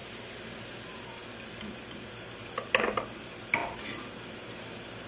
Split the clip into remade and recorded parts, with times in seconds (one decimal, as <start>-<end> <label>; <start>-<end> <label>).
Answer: 0.0-1.2 recorded; 1.2-1.7 remade; 1.7-3.6 recorded; 3.6-4.5 remade; 4.5-5.1 recorded